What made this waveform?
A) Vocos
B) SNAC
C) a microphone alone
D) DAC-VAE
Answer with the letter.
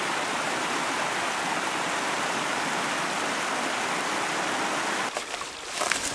C